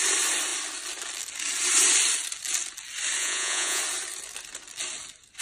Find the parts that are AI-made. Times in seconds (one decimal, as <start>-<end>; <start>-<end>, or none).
3.2-3.8